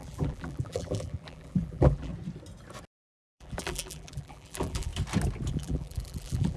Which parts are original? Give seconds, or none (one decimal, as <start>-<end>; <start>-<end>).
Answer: 2.1-3.2; 4.9-5.5